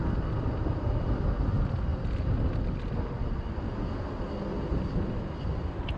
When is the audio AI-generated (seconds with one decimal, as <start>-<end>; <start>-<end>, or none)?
none